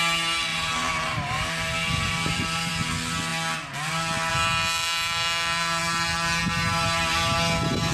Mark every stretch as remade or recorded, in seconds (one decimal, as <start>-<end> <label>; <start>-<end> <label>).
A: 0.0-0.5 recorded; 0.5-2.7 remade; 2.7-7.9 recorded